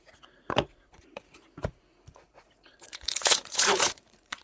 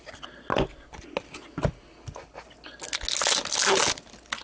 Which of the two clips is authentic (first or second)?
second